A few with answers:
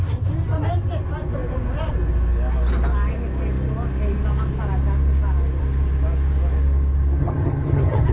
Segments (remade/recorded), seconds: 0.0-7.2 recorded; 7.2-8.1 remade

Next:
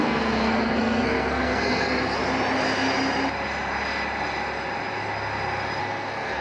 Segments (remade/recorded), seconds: 0.0-2.2 remade; 2.2-5.8 recorded; 5.8-6.4 remade

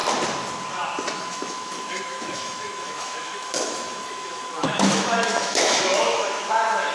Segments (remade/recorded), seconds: 0.0-1.1 recorded; 1.1-6.9 remade

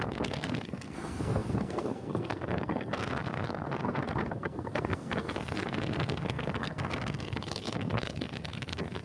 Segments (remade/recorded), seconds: 0.0-9.0 remade

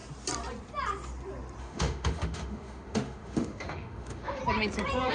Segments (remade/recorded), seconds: 0.0-1.6 recorded; 1.6-4.4 remade; 4.4-5.1 recorded

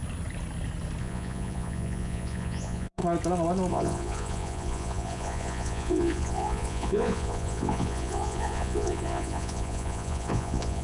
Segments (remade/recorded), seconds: 0.0-1.0 recorded; 1.0-3.0 remade; 3.0-3.7 recorded; 3.7-10.8 remade